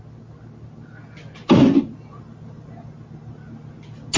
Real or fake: real